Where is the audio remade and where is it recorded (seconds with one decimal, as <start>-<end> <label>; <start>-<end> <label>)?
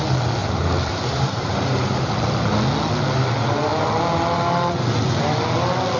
0.0-0.4 recorded; 0.4-2.1 remade; 2.1-6.0 recorded